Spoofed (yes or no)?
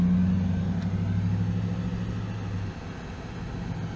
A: no